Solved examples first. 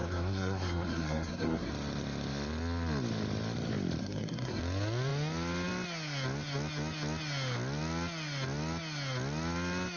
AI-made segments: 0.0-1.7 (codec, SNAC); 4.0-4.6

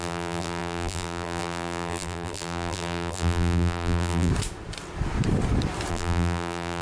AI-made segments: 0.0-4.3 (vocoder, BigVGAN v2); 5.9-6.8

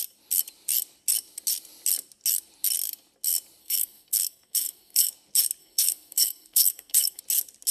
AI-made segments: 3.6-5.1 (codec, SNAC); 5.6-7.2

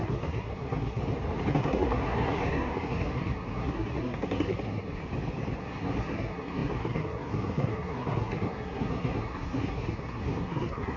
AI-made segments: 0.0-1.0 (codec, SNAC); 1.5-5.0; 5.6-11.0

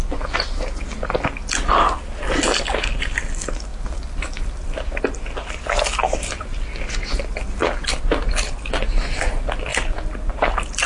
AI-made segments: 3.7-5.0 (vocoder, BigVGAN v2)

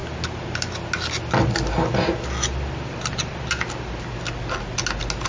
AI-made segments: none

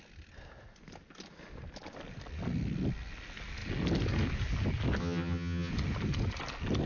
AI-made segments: 5.0-5.7 (vocoder, HiFi-GAN)

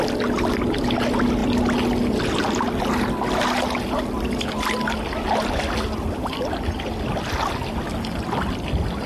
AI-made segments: none